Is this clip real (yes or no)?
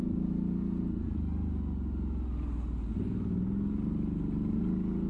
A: yes